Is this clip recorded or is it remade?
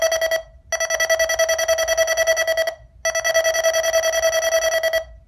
recorded